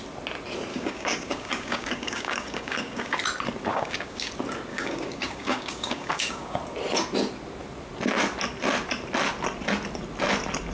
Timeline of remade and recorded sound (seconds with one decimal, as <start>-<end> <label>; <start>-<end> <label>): 0.0-0.7 recorded; 0.7-3.2 remade; 3.2-3.7 recorded; 3.7-4.3 remade; 4.3-4.7 recorded; 4.7-6.6 remade; 6.6-10.7 recorded